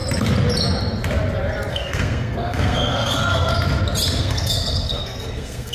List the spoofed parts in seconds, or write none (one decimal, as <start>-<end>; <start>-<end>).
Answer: 1.7-3.5; 4.2-5.7